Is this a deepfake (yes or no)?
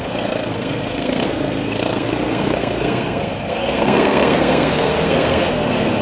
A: yes